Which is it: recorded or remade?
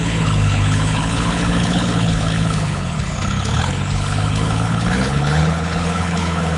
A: remade